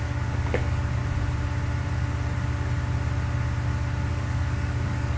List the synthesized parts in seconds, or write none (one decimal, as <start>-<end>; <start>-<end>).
0.0-1.0; 4.1-5.2